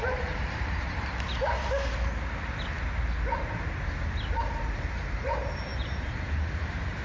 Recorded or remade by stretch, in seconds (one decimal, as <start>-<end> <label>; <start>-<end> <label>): 0.0-1.3 remade; 1.3-5.0 recorded; 5.0-7.0 remade